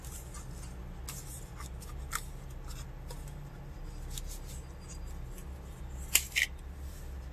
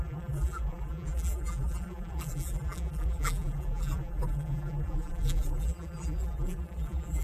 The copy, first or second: second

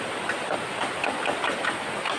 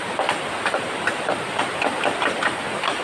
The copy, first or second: second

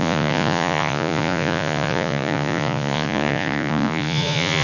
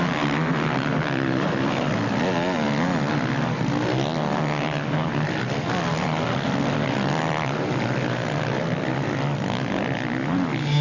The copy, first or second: first